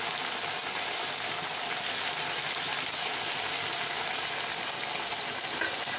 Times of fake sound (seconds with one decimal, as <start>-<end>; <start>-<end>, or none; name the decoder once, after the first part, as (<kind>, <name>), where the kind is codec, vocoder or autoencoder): none